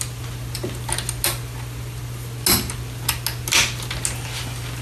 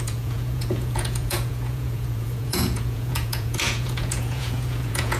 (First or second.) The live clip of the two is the first